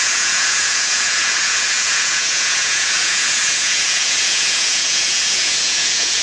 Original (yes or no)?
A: no